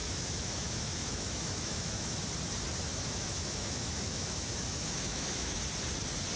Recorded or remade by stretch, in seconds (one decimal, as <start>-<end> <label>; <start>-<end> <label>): 0.0-2.3 remade; 2.3-2.9 recorded; 2.9-5.6 remade; 5.6-6.4 recorded